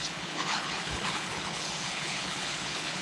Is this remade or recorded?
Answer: remade